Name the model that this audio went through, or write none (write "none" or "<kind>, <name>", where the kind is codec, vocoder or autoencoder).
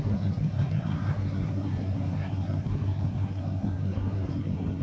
codec, SNAC